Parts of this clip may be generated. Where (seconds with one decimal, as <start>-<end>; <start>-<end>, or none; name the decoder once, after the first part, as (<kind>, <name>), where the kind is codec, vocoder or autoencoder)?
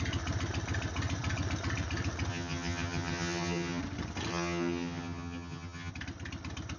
2.3-3.8 (vocoder, HiFi-GAN); 4.3-5.9